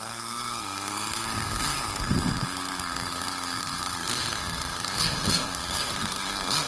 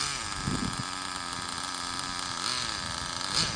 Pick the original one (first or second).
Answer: second